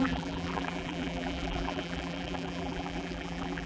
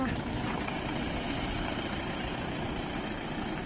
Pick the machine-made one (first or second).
first